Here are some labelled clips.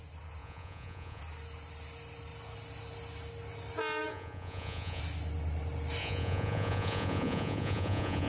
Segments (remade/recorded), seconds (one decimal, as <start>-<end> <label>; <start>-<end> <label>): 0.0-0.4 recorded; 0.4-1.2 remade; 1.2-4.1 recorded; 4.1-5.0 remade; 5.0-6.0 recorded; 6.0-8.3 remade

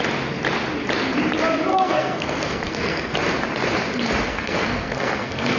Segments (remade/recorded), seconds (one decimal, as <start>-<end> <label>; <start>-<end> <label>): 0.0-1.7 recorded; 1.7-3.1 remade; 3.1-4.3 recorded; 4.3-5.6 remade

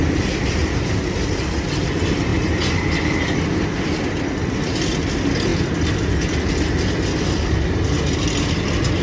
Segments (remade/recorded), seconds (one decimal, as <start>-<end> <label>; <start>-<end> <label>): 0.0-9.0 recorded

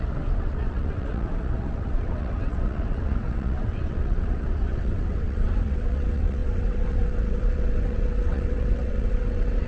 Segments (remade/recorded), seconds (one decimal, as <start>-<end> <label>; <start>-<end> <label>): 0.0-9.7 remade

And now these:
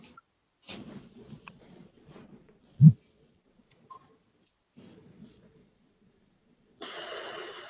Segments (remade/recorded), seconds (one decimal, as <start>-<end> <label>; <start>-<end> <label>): 0.0-0.7 recorded; 0.7-3.7 remade; 3.7-5.2 recorded; 5.2-7.7 remade

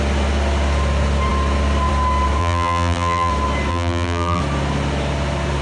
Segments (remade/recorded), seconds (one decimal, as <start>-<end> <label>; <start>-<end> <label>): 0.0-2.4 recorded; 2.4-3.3 remade; 3.3-3.7 recorded; 3.7-4.4 remade; 4.4-5.6 recorded

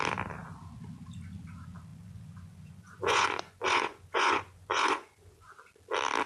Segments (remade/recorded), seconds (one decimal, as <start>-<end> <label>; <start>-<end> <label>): 0.0-1.9 recorded; 1.9-5.5 remade; 5.5-6.3 recorded

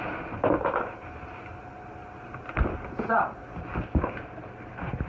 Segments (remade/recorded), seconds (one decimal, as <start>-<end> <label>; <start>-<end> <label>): 0.0-2.0 recorded; 2.0-3.2 remade; 3.2-5.1 recorded